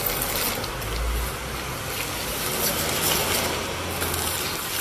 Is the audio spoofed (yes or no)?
no